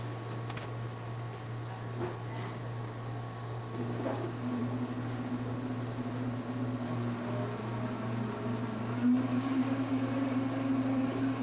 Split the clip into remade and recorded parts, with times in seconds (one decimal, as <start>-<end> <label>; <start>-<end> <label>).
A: 0.0-2.6 recorded; 2.6-4.6 remade; 4.6-9.3 recorded; 9.3-9.9 remade; 9.9-11.4 recorded